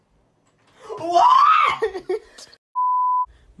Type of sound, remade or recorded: recorded